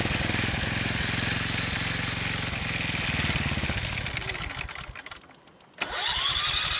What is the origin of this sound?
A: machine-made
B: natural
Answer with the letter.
B